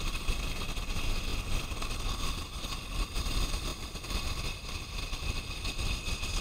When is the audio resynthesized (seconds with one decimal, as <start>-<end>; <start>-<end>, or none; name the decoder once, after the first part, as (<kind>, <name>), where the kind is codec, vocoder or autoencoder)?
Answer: none